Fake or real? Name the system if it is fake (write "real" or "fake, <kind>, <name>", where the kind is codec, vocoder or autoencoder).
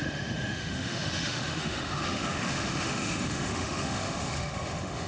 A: fake, autoencoder, DAC-VAE